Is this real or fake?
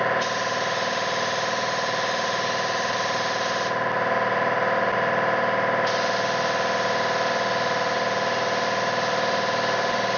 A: real